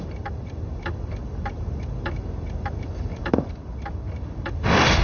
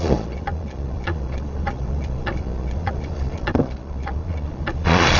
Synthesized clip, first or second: second